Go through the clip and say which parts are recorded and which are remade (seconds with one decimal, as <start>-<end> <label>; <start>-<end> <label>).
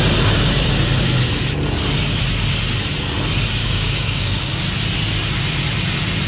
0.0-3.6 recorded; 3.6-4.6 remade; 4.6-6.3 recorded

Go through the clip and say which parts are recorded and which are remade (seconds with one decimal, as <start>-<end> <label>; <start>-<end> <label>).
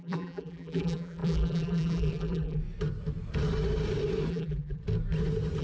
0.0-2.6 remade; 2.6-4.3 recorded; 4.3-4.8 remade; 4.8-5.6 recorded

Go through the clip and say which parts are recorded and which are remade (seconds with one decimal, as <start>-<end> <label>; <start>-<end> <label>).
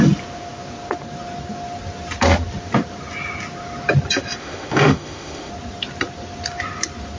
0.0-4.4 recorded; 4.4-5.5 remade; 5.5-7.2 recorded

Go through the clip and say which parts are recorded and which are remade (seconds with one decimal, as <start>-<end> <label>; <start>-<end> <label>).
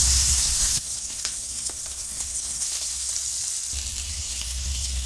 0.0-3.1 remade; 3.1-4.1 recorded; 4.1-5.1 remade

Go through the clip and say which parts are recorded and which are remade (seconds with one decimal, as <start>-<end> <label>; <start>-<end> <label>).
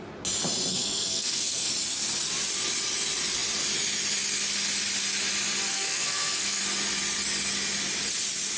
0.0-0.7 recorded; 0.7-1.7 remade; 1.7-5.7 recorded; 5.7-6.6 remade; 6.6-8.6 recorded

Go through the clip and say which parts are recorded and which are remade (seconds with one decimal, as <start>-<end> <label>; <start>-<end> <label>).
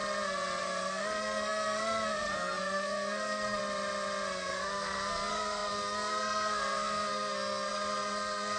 0.0-0.6 recorded; 0.6-3.6 remade; 3.6-4.4 recorded; 4.4-8.6 remade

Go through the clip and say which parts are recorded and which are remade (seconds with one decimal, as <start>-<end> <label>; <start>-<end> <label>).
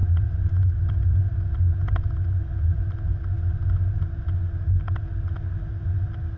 0.0-6.4 recorded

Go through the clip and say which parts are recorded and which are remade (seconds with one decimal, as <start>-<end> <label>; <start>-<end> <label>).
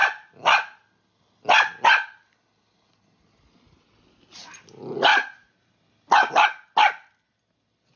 0.0-5.1 recorded; 5.1-5.7 remade; 5.7-8.0 recorded